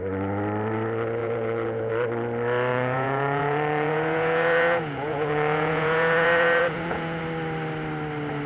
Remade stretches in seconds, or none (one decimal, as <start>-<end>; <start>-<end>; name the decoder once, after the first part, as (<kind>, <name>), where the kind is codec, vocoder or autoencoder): 1.2-1.9 (vocoder, Vocos); 2.7-7.2